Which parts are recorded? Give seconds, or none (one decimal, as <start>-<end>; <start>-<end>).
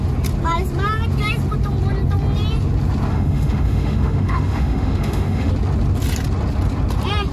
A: 0.0-3.1; 5.5-7.3